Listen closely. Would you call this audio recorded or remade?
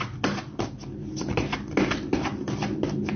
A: recorded